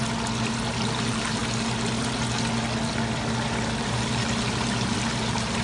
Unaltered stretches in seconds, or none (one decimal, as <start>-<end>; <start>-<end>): 0.0-0.7; 1.4-3.8